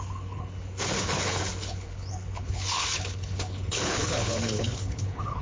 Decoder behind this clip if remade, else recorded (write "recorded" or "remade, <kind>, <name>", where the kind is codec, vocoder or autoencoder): remade, codec, HILCodec